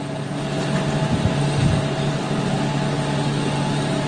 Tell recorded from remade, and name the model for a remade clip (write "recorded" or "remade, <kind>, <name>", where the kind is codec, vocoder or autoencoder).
recorded